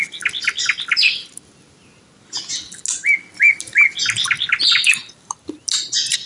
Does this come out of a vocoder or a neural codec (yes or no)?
no